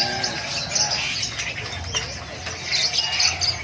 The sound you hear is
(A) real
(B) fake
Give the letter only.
A